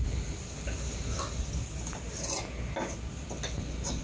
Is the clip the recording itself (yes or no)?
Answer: yes